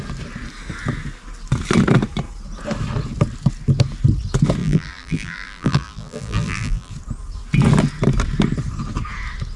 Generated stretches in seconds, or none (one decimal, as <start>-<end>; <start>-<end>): 4.6-6.9